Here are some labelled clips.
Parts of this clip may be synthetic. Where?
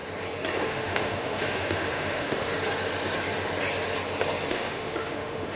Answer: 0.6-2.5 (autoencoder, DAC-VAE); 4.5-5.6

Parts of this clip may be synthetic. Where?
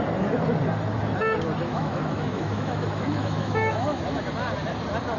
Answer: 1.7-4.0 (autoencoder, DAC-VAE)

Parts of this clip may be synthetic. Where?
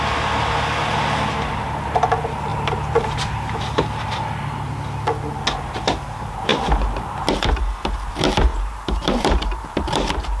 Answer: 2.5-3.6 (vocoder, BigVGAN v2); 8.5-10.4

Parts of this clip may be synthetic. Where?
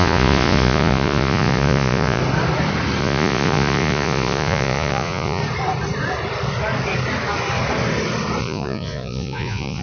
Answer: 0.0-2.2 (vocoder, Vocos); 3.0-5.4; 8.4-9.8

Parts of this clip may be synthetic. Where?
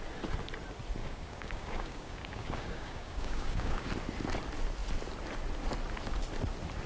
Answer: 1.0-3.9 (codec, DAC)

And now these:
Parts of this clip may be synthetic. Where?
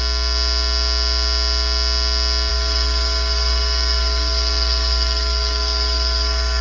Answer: 2.5-6.6 (codec, DAC)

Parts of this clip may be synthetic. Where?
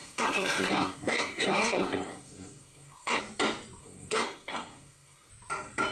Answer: 0.0-3.2 (codec, SNAC); 3.8-5.3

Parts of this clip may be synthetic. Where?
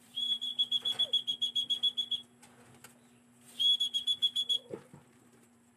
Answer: 0.0-0.5 (vocoder, BigVGAN v2); 3.8-5.8